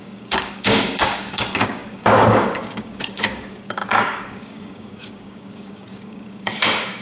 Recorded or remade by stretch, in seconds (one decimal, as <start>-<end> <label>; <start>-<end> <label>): 0.0-7.0 remade